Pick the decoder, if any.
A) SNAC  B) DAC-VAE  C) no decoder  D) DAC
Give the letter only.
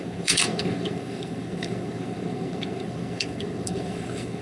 A